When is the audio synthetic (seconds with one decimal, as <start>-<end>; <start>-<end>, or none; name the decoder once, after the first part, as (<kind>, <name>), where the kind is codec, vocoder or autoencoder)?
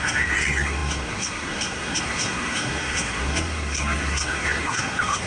0.0-5.3 (codec, SNAC)